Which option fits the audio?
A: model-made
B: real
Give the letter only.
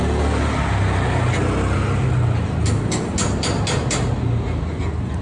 B